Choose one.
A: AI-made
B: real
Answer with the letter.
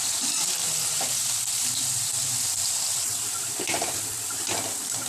A